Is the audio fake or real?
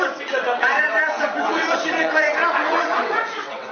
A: fake